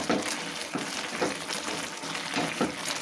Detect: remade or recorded recorded